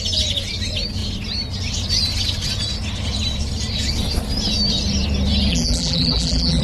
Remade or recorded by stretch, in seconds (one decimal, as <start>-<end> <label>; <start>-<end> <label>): 0.0-5.5 recorded; 5.5-6.6 remade